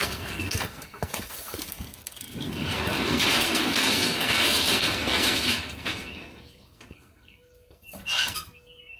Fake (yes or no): yes